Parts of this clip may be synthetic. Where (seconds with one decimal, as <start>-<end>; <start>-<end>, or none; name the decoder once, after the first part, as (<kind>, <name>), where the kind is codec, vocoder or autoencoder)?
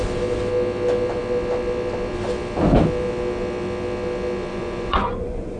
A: 4.5-5.6 (vocoder, Vocos)